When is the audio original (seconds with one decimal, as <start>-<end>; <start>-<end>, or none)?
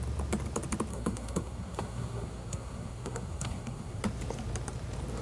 0.0-0.9; 4.0-5.2